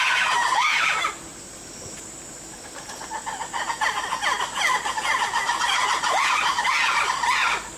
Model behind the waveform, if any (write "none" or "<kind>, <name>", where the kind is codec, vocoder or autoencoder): none